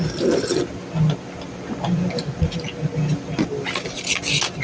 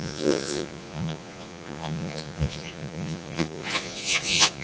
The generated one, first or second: second